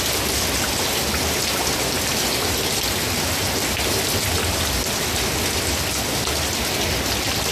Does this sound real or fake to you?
real